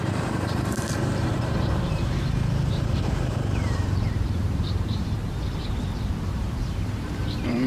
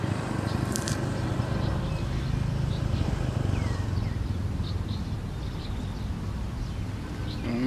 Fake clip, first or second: first